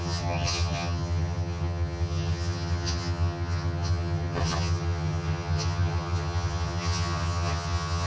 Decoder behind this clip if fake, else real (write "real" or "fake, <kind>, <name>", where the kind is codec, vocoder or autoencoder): fake, vocoder, HiFi-GAN